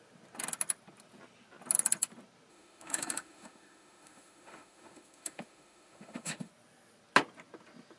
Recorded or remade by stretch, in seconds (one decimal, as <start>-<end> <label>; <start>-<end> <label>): 0.0-2.5 recorded; 2.5-6.5 remade; 6.5-8.0 recorded